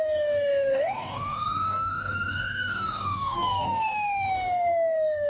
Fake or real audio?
fake